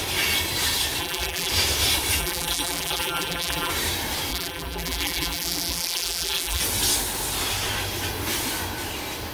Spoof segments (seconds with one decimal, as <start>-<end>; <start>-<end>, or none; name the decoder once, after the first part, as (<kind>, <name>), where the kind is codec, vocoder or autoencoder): 1.0-1.5 (vocoder, BigVGAN v2); 2.2-3.7; 4.3-6.6